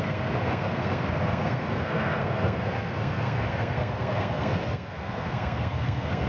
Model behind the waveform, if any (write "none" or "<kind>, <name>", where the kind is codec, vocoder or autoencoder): codec, SNAC